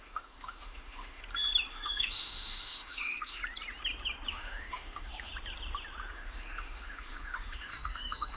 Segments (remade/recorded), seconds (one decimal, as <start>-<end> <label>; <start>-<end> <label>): 0.0-1.2 remade; 1.2-1.7 recorded; 1.7-3.4 remade; 3.4-4.3 recorded; 4.3-5.3 remade; 5.3-6.1 recorded; 6.1-8.4 remade